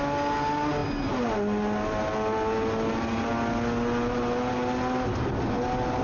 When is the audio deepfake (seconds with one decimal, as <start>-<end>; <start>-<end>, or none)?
none